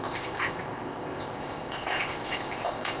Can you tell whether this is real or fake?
fake